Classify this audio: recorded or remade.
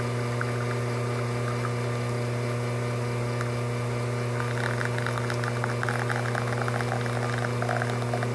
recorded